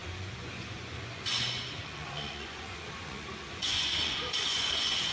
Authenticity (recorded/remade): remade